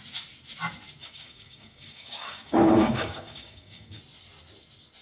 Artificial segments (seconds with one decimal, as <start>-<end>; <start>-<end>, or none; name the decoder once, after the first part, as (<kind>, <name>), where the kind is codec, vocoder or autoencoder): 1.0-4.0 (codec, DAC)